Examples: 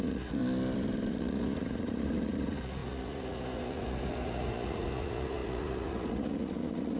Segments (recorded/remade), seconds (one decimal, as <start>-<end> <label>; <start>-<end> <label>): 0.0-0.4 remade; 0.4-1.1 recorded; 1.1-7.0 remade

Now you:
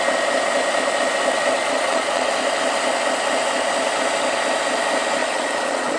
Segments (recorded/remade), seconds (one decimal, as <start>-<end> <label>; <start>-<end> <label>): 0.0-1.6 recorded; 1.6-2.3 remade; 2.3-5.2 recorded; 5.2-6.0 remade

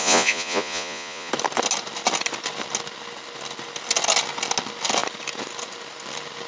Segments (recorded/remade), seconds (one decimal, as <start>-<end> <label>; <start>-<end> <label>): 0.0-1.3 remade; 1.3-6.5 recorded

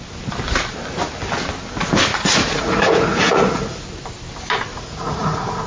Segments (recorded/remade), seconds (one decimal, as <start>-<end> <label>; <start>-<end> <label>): 0.0-2.1 recorded; 2.1-3.8 remade; 3.8-4.7 recorded; 4.7-5.7 remade

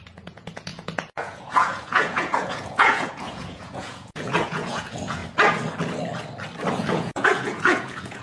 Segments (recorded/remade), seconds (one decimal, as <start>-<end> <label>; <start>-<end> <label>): 0.0-5.2 remade; 5.2-6.7 recorded; 6.7-8.2 remade

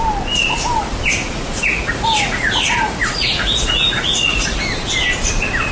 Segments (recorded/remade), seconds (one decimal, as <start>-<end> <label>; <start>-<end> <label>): 0.0-1.2 recorded; 1.2-4.6 remade; 4.6-5.7 recorded